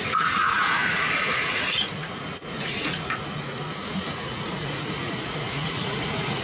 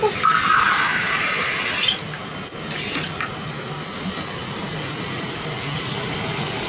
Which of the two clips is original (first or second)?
second